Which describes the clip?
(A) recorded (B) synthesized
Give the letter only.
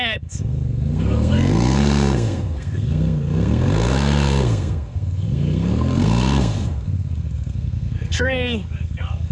B